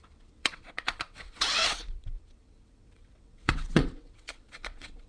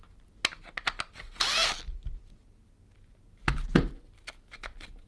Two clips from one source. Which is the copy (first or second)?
first